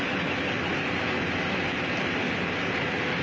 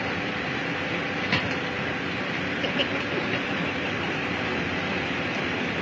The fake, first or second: second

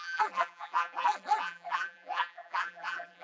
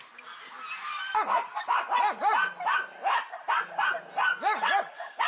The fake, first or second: first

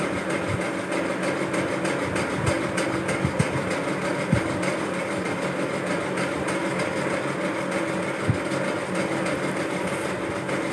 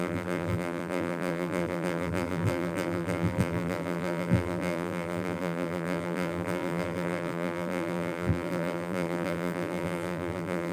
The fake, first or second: second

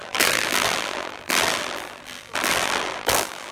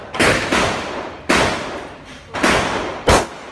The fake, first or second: first